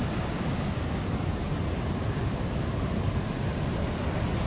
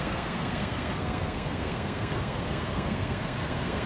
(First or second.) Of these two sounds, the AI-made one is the second